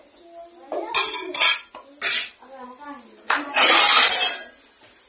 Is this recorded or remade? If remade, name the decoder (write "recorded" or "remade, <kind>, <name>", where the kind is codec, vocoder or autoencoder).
recorded